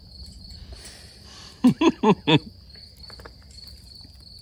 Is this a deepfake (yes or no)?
no